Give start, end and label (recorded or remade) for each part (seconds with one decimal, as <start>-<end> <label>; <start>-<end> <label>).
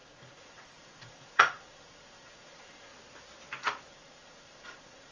0.0-2.9 remade; 2.9-3.9 recorded; 3.9-5.1 remade